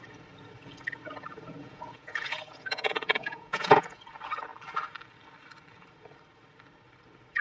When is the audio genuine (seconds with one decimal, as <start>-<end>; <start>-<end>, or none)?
0.0-1.6; 4.0-7.4